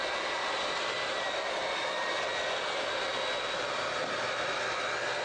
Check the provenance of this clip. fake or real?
real